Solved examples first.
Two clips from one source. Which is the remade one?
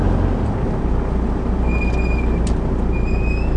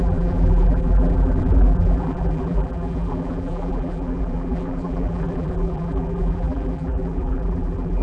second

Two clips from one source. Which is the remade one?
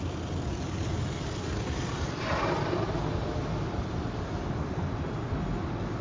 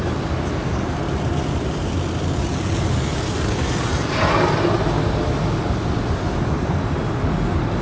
first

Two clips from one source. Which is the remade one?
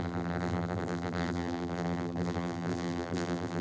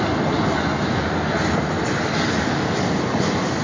first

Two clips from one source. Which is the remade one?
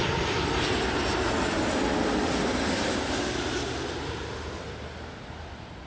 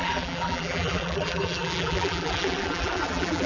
second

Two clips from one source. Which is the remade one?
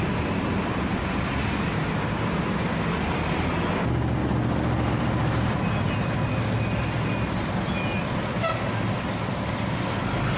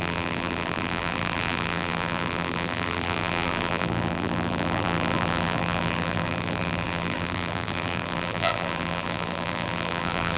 second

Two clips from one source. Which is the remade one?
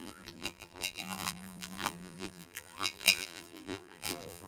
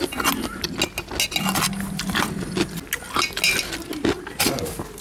first